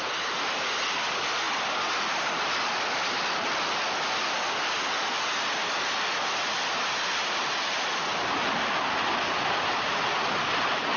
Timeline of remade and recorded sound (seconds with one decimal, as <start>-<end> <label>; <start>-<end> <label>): 0.0-11.0 recorded